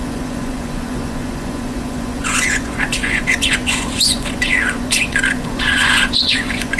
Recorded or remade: remade